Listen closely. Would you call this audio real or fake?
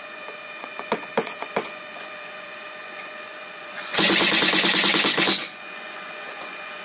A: fake